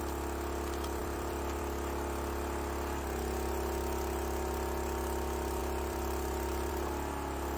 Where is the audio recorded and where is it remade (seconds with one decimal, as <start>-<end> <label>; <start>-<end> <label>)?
0.0-1.0 recorded; 1.0-1.6 remade; 1.6-5.6 recorded; 5.6-6.7 remade; 6.7-7.6 recorded